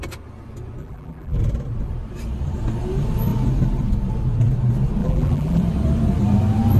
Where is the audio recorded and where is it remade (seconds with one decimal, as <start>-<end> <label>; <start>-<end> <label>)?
0.0-0.8 recorded; 0.8-1.4 remade; 1.4-5.0 recorded; 5.0-5.6 remade; 5.6-6.8 recorded